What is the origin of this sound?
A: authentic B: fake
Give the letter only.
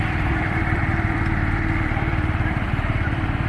B